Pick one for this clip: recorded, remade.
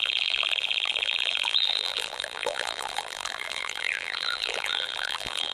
remade